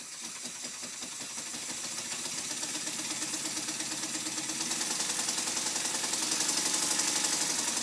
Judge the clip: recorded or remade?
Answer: recorded